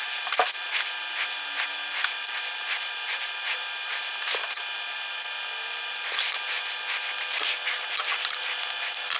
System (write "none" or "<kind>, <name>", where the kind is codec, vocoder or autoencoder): none